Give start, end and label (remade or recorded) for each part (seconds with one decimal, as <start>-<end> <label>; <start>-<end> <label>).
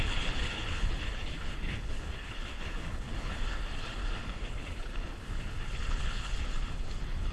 0.0-4.0 remade; 4.0-4.5 recorded; 4.5-7.3 remade